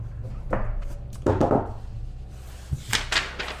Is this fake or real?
real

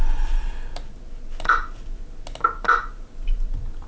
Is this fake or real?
real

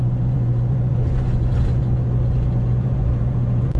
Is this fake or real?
fake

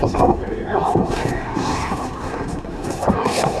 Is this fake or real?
fake